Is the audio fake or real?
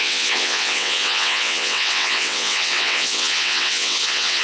fake